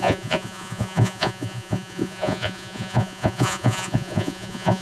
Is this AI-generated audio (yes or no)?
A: yes